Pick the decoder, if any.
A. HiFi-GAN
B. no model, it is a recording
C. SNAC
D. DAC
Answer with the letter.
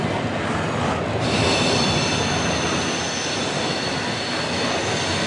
B